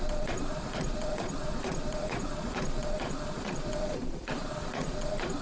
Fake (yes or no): yes